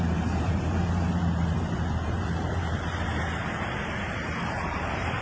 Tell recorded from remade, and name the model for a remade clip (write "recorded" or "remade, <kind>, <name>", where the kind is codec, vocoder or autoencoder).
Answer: remade, vocoder, BigVGAN v2